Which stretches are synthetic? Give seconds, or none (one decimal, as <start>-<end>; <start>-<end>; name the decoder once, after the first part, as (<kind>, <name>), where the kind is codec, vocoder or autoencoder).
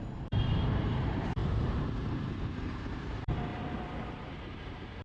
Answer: 0.0-3.5 (vocoder, BigVGAN v2); 4.3-5.0